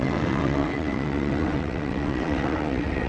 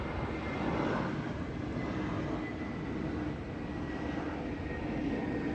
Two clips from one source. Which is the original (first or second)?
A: second